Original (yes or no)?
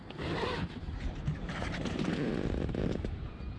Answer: no